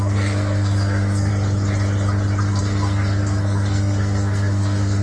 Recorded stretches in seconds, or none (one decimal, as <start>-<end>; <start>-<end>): 1.3-2.6

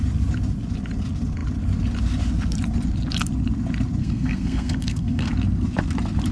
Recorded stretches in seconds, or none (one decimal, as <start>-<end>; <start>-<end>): 0.0-4.0; 5.3-6.3